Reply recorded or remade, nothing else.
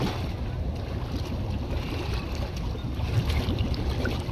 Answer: recorded